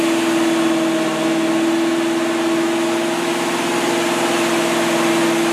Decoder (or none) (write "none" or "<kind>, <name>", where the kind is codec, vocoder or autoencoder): none